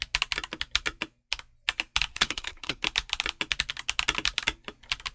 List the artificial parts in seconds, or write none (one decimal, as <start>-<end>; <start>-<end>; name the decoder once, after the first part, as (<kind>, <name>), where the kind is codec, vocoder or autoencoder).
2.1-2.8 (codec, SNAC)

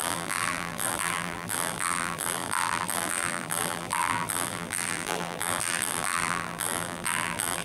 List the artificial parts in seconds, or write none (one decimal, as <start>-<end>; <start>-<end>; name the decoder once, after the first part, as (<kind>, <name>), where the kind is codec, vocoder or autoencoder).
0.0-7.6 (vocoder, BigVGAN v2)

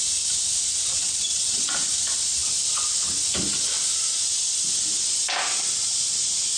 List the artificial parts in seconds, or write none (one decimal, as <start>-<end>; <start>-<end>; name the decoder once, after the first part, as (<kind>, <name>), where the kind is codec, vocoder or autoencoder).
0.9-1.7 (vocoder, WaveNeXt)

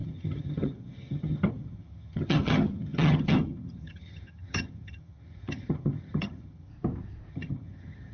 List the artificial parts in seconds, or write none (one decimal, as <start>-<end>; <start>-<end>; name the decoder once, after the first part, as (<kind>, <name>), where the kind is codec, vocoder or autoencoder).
0.0-6.7 (vocoder, HiFi-GAN); 7.3-8.1

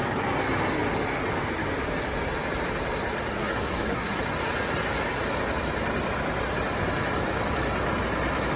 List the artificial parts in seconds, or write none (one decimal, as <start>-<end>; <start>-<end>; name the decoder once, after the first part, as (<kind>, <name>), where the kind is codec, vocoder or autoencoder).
3.3-4.2 (codec, SNAC)

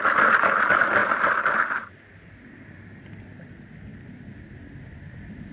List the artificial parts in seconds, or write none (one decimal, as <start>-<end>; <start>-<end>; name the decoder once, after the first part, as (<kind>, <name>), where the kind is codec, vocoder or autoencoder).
none